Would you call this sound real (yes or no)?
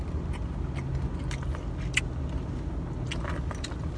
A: yes